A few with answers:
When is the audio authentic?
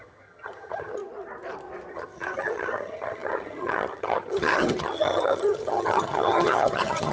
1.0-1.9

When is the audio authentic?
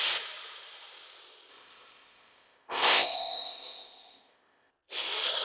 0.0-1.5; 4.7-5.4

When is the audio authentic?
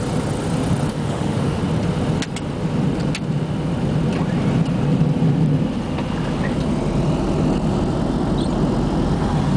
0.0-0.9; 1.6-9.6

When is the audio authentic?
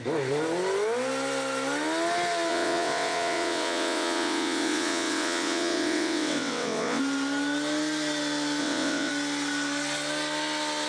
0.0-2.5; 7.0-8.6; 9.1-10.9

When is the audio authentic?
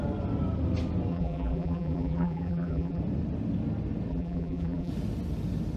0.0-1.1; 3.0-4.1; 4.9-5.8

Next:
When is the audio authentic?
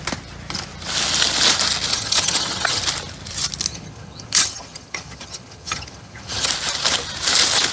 0.0-1.9; 2.8-3.7; 6.5-7.7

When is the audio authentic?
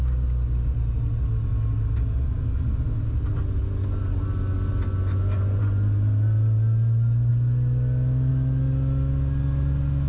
0.0-10.1